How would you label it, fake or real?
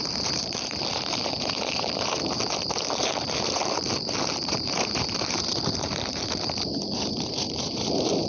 fake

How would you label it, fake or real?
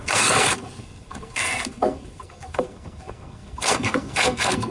fake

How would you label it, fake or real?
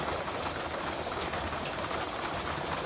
real